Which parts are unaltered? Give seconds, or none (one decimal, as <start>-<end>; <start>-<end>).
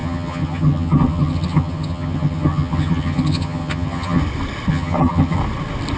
4.2-4.7; 5.4-6.0